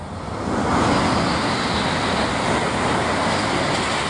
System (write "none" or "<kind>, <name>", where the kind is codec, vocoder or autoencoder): none